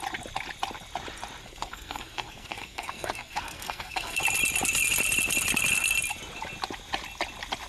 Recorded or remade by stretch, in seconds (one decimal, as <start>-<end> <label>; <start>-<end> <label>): 0.0-1.4 recorded; 1.4-4.2 remade; 4.2-7.7 recorded